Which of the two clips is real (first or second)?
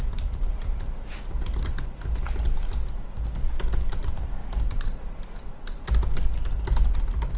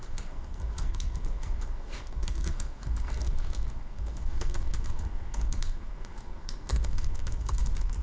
first